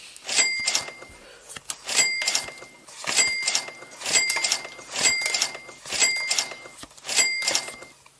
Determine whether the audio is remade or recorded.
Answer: recorded